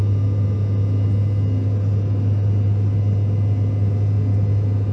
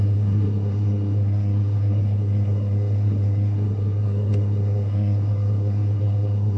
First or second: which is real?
first